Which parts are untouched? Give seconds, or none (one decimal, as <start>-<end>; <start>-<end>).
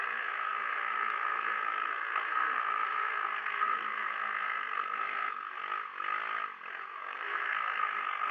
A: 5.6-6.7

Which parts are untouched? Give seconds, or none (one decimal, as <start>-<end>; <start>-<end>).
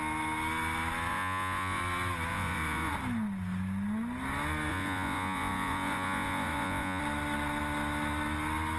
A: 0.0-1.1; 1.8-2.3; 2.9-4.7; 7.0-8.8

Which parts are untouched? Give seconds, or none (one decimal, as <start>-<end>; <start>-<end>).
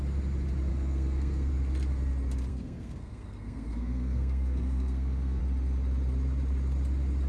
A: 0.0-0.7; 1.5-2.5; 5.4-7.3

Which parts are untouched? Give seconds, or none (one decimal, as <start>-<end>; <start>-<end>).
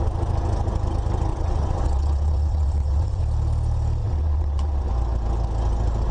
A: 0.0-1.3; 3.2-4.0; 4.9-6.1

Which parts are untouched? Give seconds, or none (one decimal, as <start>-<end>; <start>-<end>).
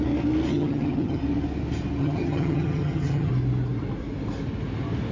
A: 0.0-0.5; 1.2-2.0; 3.3-5.1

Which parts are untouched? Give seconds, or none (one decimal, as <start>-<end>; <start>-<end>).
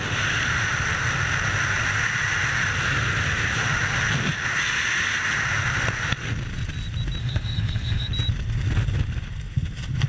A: 0.0-7.2; 8.1-10.1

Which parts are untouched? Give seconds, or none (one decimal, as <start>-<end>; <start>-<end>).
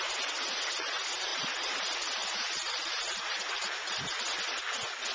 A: 0.0-1.3; 4.4-5.1